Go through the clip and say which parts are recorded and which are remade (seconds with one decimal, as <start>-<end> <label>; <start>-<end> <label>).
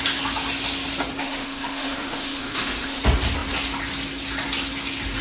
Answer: 0.0-1.2 recorded; 1.2-3.0 remade; 3.0-5.2 recorded